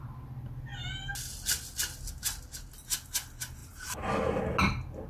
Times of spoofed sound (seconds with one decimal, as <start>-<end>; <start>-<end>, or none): 3.6-4.4